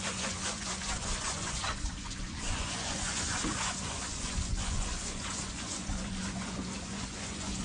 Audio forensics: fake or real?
fake